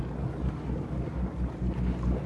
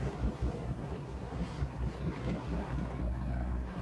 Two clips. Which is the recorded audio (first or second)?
first